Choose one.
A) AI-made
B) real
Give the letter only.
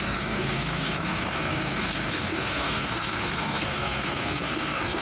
A